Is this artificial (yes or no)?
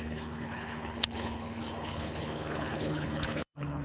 yes